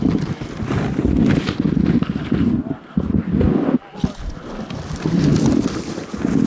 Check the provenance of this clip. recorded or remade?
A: recorded